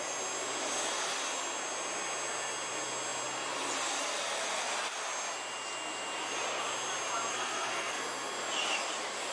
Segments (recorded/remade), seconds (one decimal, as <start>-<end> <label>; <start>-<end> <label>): 0.0-7.3 recorded; 7.3-8.0 remade; 8.0-9.3 recorded